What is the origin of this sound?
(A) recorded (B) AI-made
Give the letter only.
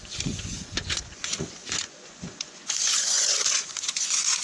B